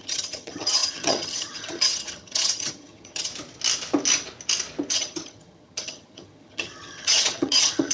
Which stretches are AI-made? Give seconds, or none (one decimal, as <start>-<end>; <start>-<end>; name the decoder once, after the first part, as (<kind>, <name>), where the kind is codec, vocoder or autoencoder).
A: 0.0-3.3 (vocoder, HiFi-GAN); 4.9-7.9